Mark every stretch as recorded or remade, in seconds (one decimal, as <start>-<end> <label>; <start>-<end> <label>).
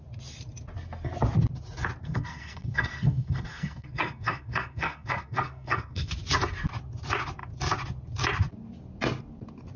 0.0-2.0 recorded; 2.0-6.1 remade; 6.1-9.8 recorded